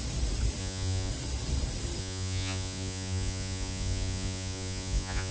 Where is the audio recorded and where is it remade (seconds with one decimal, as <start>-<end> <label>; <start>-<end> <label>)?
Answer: 0.0-0.6 recorded; 0.6-1.1 remade; 1.1-2.0 recorded; 2.0-5.3 remade